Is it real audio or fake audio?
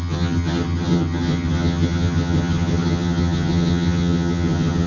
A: fake